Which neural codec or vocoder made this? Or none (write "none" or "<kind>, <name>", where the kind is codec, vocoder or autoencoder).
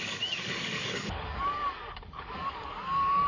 codec, DAC